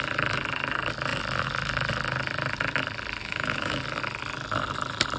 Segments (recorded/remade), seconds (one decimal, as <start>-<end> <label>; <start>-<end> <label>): 0.0-3.2 recorded; 3.2-3.8 remade; 3.8-5.2 recorded

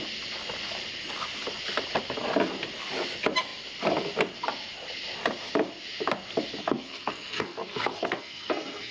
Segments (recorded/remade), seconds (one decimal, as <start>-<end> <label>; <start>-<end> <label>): 0.0-6.6 recorded; 6.6-8.9 remade

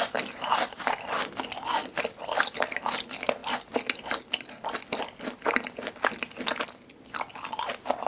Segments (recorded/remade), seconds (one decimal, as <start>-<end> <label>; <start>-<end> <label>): 0.0-1.8 recorded; 1.8-2.8 remade; 2.8-8.1 recorded

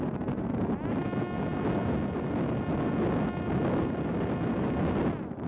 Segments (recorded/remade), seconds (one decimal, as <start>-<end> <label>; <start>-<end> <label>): 0.0-5.5 recorded

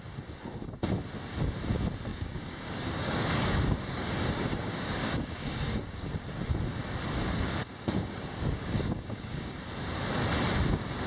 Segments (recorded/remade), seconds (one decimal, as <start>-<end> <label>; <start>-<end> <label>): 0.0-2.1 recorded; 2.1-6.1 remade; 6.1-7.6 recorded; 7.6-9.5 remade; 9.5-11.1 recorded